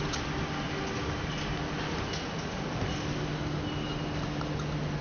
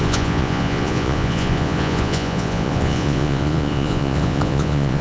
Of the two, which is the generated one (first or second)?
second